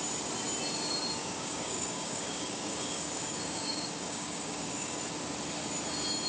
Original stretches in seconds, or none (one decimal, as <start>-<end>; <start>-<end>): 0.0-1.2; 5.0-6.3